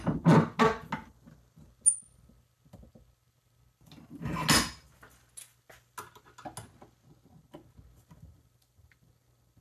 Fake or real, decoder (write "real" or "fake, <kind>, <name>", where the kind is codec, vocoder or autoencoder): real